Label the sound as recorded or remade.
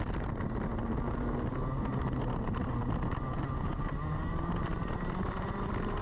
recorded